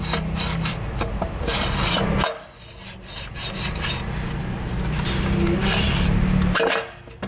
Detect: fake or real real